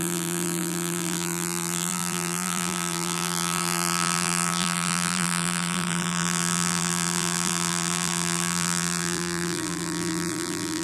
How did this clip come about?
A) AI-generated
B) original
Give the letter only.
A